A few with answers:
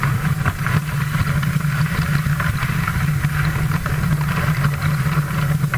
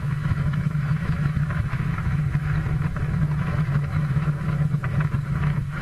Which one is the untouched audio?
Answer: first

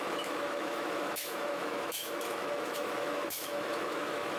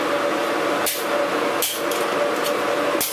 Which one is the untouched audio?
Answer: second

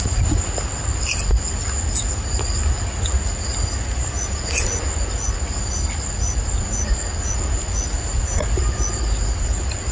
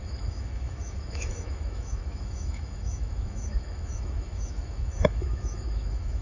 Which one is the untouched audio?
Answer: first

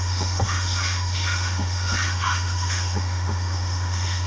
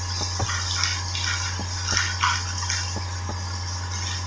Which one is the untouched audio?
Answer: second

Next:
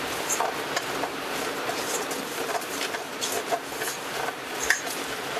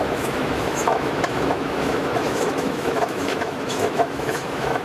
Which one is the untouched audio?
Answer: first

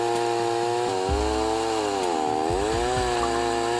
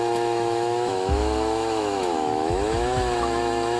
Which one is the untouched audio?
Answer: first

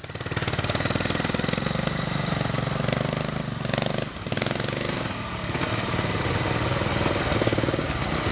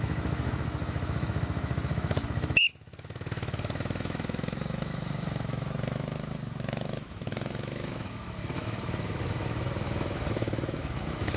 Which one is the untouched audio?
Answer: first